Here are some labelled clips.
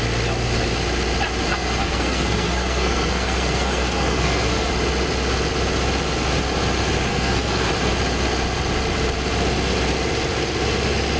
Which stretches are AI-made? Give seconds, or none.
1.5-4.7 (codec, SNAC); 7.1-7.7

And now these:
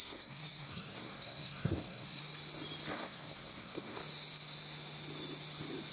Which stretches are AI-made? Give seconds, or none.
0.0-2.2 (codec, SNAC); 2.9-4.0

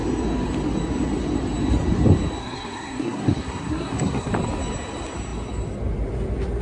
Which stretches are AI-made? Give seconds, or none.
2.4-4.3 (codec, SNAC)

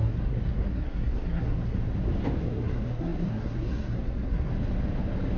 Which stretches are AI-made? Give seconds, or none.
0.0-1.8 (codec, SNAC); 2.4-4.5